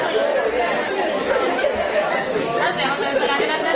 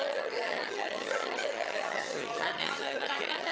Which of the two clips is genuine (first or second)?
first